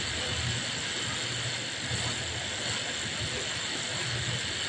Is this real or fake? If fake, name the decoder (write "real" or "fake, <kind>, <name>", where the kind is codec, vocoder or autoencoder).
real